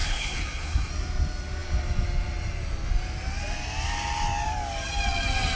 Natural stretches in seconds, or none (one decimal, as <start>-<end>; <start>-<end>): 0.9-5.5